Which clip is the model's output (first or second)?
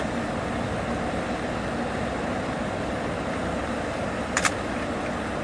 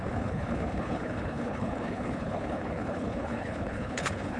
second